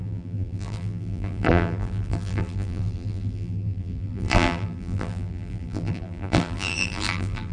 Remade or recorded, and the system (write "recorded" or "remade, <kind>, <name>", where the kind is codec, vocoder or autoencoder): remade, vocoder, BigVGAN v2